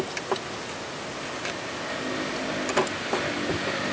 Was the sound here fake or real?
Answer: real